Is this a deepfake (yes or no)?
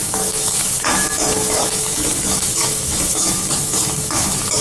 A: yes